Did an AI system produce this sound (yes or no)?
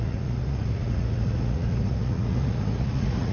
yes